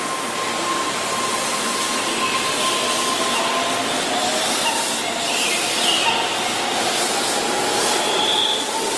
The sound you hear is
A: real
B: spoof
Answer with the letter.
A